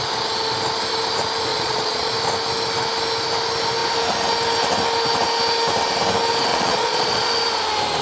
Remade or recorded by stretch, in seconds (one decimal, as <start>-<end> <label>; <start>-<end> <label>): 0.0-1.5 recorded; 1.5-2.1 remade; 2.1-6.5 recorded; 6.5-7.3 remade; 7.3-8.0 recorded